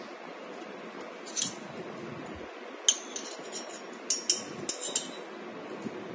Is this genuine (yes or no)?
yes